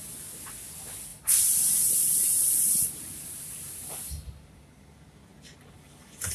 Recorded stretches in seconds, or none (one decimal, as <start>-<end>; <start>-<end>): 0.0-1.1; 4.8-6.3